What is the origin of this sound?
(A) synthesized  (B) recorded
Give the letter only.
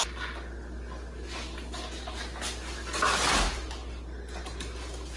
B